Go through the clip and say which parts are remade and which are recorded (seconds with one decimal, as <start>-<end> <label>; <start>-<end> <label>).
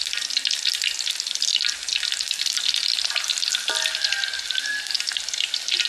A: 0.0-5.9 recorded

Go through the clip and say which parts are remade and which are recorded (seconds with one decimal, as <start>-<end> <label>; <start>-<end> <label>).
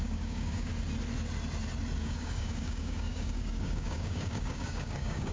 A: 0.0-0.7 remade; 0.7-2.0 recorded; 2.0-5.3 remade